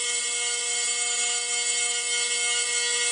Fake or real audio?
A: fake